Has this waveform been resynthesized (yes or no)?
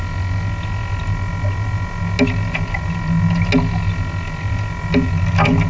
no